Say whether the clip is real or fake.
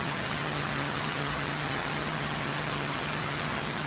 fake